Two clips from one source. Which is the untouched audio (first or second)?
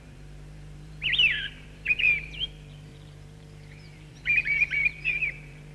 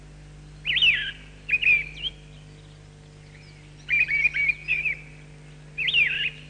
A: second